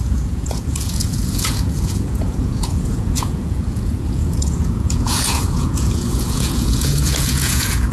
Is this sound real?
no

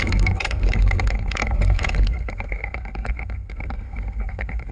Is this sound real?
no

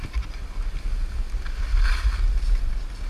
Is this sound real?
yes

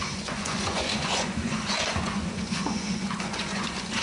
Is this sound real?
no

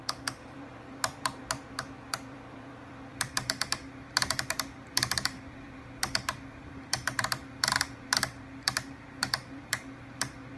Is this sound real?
no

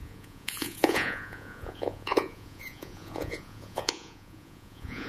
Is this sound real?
no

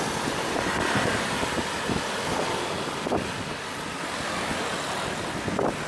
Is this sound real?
yes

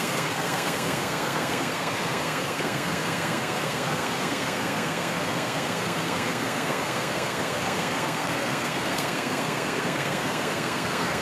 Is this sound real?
no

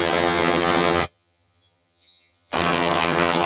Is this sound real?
no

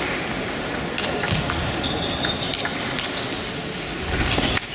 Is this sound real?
yes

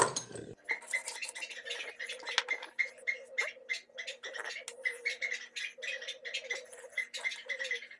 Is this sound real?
yes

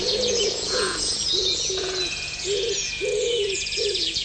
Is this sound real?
no